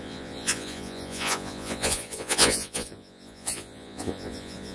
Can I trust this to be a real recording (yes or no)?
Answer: no